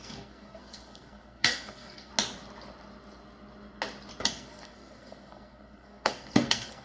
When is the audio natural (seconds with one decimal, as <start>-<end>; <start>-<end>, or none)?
2.1-4.2